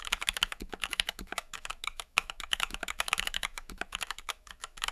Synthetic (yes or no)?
yes